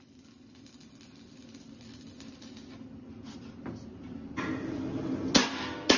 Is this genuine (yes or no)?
yes